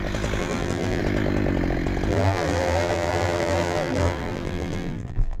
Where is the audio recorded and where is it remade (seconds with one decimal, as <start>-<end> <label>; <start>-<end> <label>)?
0.0-0.4 recorded; 0.4-1.0 remade; 1.0-2.1 recorded; 2.1-5.4 remade